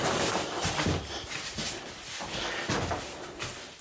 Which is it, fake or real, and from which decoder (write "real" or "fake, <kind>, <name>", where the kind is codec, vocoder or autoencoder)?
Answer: real